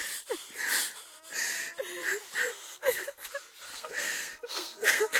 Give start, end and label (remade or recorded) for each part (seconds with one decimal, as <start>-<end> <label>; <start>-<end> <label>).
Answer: 0.0-2.5 recorded; 2.5-3.3 remade; 3.3-3.7 recorded; 3.7-5.2 remade